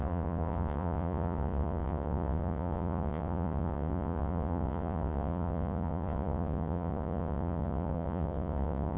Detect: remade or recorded remade